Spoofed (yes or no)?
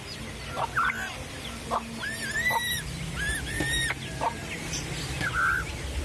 no